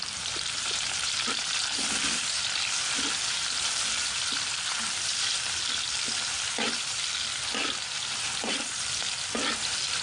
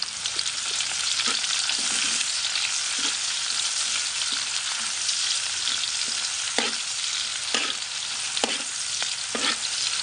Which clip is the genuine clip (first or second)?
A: second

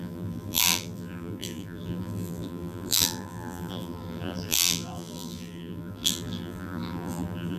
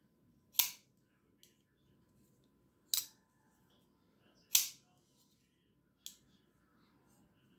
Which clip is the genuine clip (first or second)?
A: second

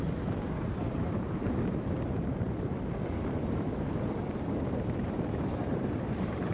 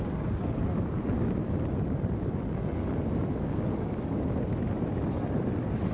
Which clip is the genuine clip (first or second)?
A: second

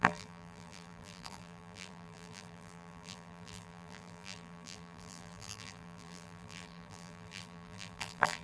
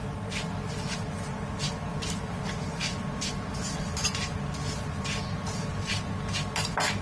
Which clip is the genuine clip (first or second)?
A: second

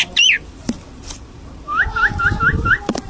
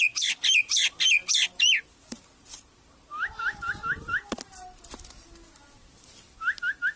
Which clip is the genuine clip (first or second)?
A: second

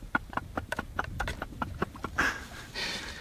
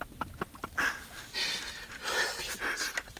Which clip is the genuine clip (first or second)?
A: second